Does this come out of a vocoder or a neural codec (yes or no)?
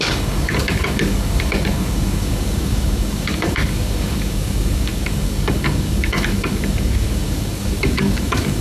yes